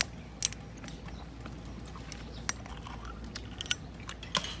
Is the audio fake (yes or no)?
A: no